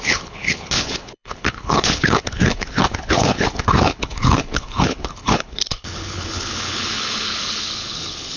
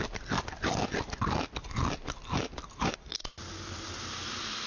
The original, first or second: second